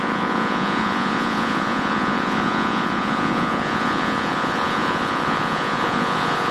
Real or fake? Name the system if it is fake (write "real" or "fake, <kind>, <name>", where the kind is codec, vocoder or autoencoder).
fake, vocoder, Vocos